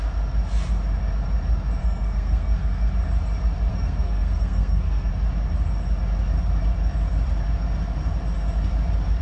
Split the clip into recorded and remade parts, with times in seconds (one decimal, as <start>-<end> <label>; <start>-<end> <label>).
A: 0.0-1.8 recorded; 1.8-2.9 remade; 2.9-3.7 recorded; 3.7-5.1 remade; 5.1-9.2 recorded